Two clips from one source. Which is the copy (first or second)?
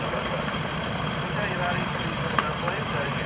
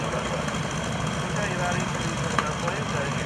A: first